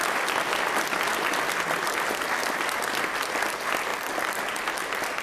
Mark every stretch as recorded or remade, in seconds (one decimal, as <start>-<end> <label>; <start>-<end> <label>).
0.0-5.2 recorded